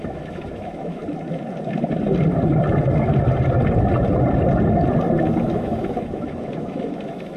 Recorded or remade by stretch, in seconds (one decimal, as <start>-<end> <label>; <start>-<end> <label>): 0.0-1.0 remade; 1.0-5.4 recorded; 5.4-7.4 remade